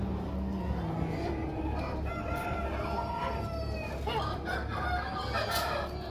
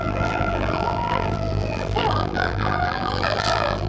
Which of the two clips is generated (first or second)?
second